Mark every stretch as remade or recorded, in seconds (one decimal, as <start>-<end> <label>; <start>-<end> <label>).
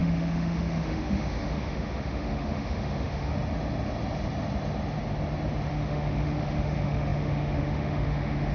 0.0-3.3 remade; 3.3-5.7 recorded; 5.7-8.5 remade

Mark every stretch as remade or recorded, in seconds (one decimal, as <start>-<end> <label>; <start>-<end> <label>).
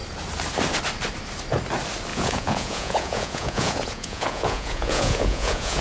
0.0-2.1 recorded; 2.1-5.8 remade